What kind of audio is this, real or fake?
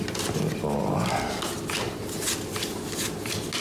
real